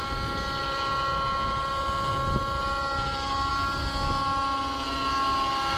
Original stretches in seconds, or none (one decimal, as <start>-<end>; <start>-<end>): 0.0-5.8